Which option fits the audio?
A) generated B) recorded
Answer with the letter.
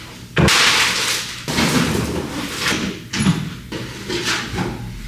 B